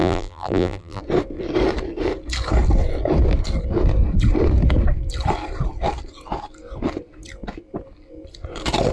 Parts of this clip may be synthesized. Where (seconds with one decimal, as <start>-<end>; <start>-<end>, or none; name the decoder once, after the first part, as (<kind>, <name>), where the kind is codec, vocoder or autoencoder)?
0.0-1.0 (vocoder, BigVGAN v2)